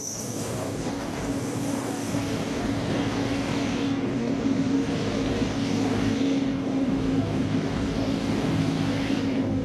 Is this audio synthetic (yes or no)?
yes